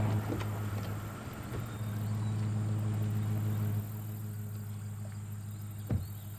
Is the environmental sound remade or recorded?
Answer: recorded